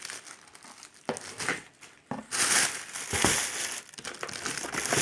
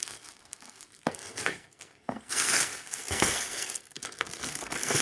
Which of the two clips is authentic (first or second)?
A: first